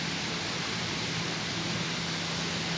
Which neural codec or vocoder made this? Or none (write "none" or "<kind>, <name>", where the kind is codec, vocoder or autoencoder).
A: none